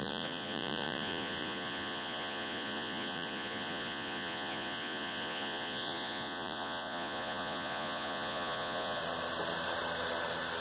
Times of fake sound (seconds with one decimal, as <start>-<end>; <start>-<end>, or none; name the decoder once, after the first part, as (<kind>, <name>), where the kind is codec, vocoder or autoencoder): 0.0-9.0 (vocoder, Vocos)